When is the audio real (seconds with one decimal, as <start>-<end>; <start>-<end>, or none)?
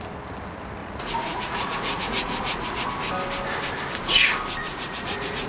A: 0.0-0.8; 2.9-4.6